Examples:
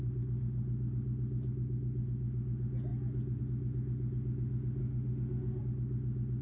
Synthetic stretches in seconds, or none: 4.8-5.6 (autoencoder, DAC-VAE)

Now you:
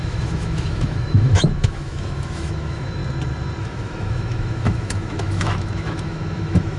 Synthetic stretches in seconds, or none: 0.0-3.0 (autoencoder, DAC-VAE); 3.6-6.8

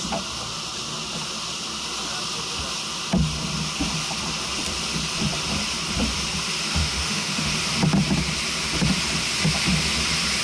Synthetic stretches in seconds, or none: 6.8-7.5 (autoencoder, DAC-VAE)

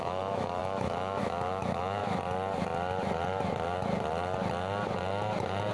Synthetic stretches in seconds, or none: 0.0-2.0 (autoencoder, DAC-VAE)

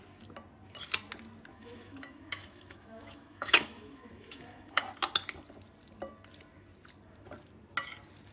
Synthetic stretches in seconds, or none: 1.5-4.8 (autoencoder, DAC-VAE)

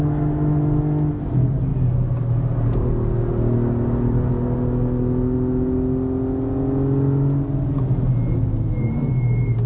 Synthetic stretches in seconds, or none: none